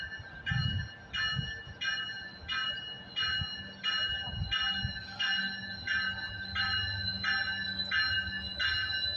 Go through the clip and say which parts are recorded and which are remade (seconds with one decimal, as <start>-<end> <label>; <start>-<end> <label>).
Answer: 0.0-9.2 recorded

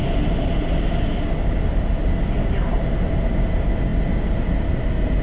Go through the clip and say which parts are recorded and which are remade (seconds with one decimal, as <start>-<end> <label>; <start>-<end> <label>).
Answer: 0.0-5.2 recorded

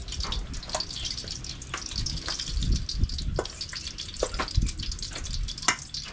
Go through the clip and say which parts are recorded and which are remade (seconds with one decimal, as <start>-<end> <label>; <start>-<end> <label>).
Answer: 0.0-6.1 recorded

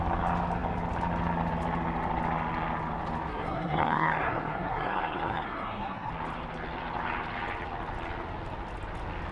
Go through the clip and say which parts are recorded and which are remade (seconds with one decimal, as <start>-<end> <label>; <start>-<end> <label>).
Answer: 0.0-3.3 recorded; 3.3-6.1 remade; 6.1-9.3 recorded